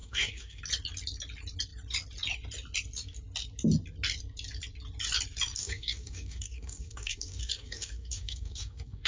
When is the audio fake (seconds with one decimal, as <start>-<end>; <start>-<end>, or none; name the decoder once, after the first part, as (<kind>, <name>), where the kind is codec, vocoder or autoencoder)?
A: 0.0-0.6 (codec, DAC); 5.6-9.1